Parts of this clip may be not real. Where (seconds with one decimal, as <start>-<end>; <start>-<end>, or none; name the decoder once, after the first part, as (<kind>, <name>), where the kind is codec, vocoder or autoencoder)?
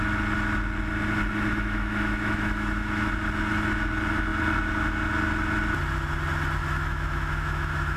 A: 1.5-3.1 (autoencoder, DAC-VAE); 6.6-8.0